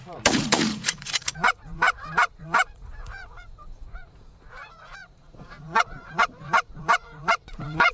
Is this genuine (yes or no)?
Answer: no